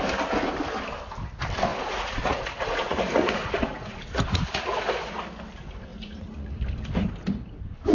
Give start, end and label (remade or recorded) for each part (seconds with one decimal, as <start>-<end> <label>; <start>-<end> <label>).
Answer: 0.0-1.7 recorded; 1.7-5.1 remade; 5.1-5.9 recorded; 5.9-6.6 remade; 6.6-7.9 recorded